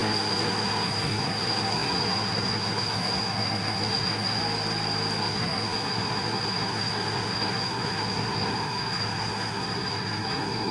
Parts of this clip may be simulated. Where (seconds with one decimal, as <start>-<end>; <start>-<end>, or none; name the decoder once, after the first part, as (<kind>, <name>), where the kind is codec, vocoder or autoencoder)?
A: 0.0-4.4 (codec, SNAC); 5.2-10.7